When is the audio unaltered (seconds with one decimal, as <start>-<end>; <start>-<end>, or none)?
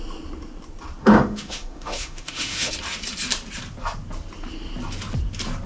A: 0.0-1.0; 2.7-5.7